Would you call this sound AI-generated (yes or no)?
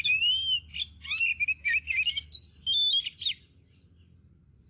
no